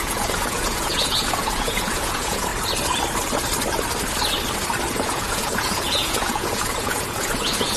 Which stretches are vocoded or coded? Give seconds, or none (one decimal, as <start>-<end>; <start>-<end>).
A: 0.0-2.5; 4.9-7.8